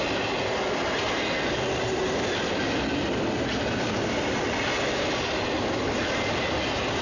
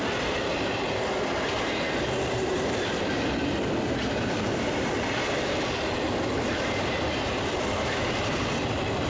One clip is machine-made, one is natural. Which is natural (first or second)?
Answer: first